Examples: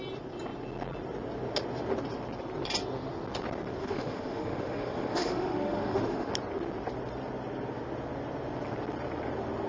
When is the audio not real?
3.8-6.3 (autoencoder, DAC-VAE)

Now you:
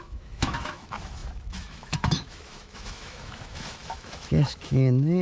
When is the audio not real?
0.0-5.2 (autoencoder, DAC-VAE)